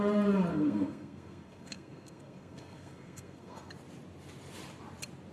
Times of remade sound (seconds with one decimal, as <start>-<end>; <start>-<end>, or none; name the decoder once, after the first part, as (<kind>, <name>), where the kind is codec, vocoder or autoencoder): 0.5-3.7 (codec, SNAC)

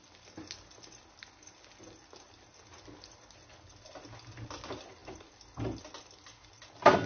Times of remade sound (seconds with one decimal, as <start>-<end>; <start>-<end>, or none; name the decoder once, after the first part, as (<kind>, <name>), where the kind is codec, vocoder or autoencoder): none

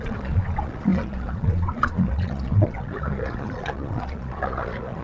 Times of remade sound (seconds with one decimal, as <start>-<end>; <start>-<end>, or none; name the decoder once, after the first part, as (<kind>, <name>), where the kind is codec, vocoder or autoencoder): 0.0-5.0 (vocoder, Vocos)

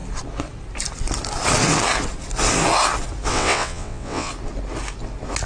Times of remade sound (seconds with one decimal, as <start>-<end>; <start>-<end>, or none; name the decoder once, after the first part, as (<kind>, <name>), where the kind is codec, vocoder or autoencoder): 3.3-4.3 (vocoder, WaveNeXt)